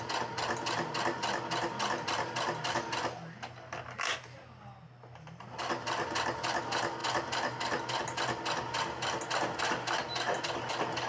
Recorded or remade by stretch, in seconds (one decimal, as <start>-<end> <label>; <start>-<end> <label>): 0.0-11.1 recorded